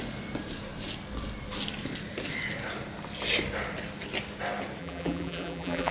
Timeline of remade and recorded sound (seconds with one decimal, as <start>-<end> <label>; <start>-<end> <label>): 0.0-4.8 recorded; 4.8-5.9 remade